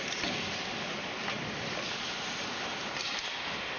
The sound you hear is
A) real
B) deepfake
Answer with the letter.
A